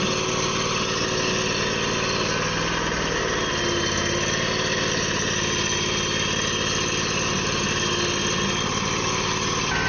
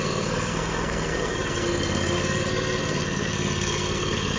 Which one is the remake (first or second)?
second